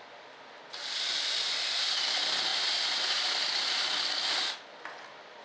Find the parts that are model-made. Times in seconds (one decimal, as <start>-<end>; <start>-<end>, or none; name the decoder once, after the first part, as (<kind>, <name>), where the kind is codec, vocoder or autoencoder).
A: none